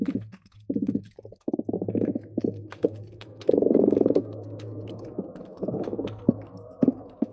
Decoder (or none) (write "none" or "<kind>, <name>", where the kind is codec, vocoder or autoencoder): codec, SNAC